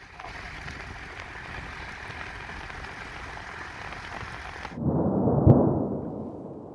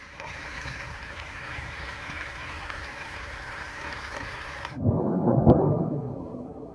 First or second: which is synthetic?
second